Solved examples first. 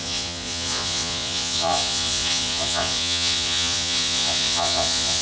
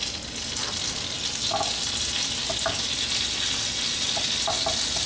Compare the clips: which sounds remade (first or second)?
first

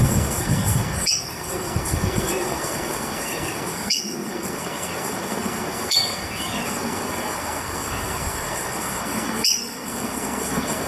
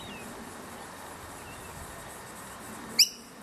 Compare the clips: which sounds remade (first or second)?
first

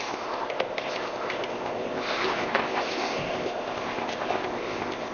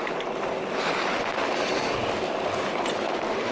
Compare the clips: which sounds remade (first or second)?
first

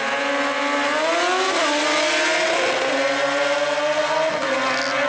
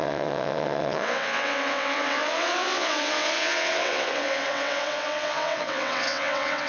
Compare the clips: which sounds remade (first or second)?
second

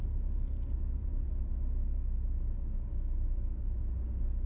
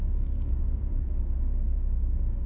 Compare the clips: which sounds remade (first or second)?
second